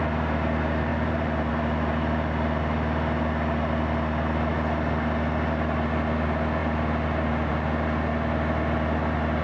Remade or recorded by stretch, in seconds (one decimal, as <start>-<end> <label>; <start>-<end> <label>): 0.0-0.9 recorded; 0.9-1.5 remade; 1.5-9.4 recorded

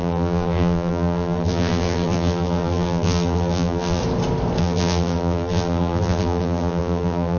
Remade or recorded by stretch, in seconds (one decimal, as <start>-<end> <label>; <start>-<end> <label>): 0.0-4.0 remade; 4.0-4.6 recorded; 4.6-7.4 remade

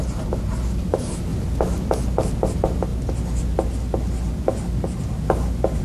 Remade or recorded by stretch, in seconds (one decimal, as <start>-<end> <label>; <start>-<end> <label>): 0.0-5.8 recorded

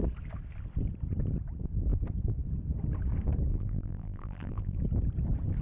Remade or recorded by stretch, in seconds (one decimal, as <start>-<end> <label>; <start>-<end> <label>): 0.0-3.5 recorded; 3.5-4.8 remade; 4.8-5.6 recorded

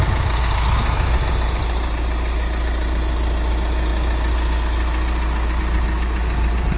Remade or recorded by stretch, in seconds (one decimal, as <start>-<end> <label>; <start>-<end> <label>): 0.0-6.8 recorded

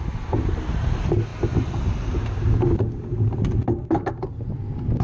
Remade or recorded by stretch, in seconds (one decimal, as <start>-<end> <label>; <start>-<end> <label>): 0.0-5.0 recorded

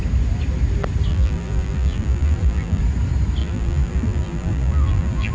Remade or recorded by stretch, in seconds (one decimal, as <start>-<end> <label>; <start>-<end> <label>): 0.0-1.1 recorded; 1.1-2.8 remade; 2.8-3.4 recorded; 3.4-5.3 remade

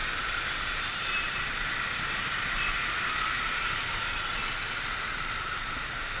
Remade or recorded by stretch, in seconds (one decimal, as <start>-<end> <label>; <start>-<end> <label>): 0.0-4.4 remade; 4.4-6.2 recorded